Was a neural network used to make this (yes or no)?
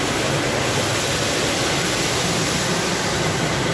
no